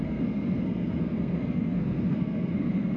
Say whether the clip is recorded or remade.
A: remade